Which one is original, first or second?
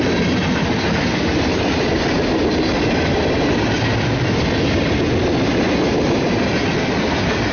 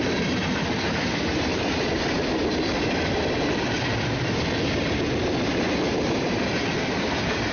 first